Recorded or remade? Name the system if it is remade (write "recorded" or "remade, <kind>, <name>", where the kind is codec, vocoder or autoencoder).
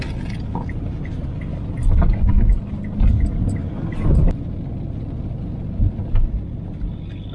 recorded